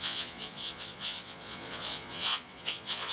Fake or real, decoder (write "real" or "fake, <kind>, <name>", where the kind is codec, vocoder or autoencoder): fake, vocoder, Vocos